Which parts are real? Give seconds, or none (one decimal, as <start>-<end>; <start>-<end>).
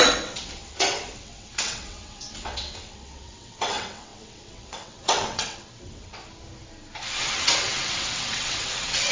6.2-7.2